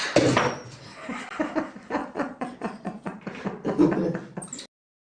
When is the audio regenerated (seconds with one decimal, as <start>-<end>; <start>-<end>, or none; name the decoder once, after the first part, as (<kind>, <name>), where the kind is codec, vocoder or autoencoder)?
2.0-3.2 (vocoder, Vocos)

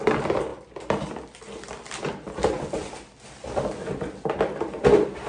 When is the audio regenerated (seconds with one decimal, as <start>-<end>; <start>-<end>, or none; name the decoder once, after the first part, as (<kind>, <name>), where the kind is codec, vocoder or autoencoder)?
none

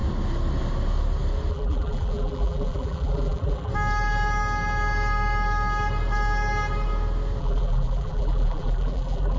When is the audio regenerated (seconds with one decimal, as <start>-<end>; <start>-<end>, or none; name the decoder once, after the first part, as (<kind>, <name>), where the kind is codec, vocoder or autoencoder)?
1.5-3.7 (vocoder, BigVGAN v2); 7.4-9.4

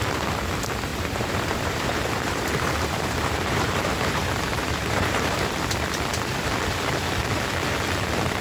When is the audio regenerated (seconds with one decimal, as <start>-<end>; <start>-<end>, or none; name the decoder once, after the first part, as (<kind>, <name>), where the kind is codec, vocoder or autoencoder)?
0.9-5.5 (vocoder, BigVGAN v2)

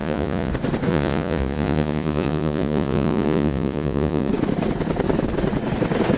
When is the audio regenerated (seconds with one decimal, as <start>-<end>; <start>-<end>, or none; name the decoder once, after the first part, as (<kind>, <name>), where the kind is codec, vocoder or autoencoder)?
0.0-0.5 (vocoder, Vocos); 0.9-4.3

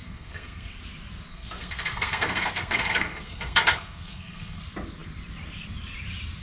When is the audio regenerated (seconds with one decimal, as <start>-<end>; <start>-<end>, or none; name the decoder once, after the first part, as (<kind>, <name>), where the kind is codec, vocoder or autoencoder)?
0.0-0.8 (codec, SNAC); 1.3-4.6